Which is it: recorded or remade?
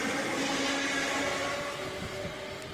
recorded